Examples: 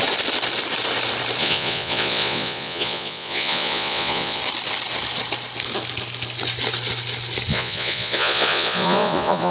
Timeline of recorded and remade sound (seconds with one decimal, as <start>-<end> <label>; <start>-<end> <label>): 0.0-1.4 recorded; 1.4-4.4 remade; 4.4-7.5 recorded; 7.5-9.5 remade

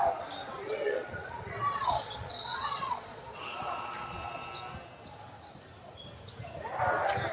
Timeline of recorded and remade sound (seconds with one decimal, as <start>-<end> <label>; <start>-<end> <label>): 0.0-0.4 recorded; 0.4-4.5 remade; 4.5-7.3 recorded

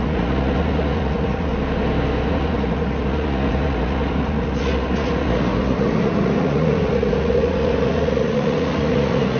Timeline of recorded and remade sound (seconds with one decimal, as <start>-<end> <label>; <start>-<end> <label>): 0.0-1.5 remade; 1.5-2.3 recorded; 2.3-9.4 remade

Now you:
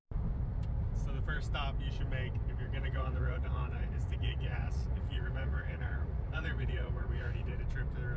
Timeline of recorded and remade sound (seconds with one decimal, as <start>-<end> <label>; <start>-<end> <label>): 0.0-2.8 recorded; 2.8-7.6 remade; 7.6-8.2 recorded